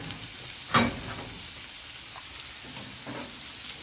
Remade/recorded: remade